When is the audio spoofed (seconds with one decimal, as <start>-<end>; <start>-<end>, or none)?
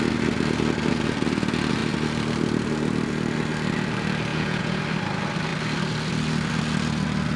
4.3-4.8